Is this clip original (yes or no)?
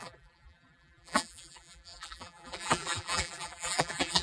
no